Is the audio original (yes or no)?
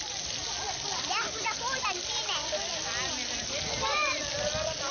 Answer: yes